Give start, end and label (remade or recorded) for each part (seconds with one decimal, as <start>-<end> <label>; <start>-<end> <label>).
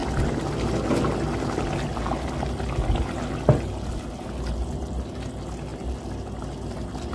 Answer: 0.0-7.1 recorded